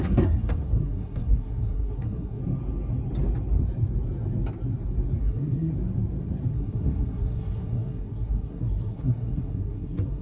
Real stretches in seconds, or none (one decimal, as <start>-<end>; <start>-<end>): 2.4-5.2; 5.7-6.5